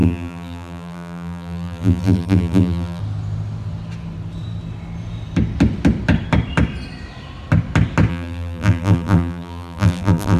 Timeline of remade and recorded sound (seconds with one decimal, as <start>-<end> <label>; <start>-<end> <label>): 0.0-3.0 remade; 3.0-8.1 recorded; 8.1-10.4 remade